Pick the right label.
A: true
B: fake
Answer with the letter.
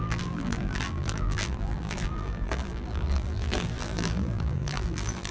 B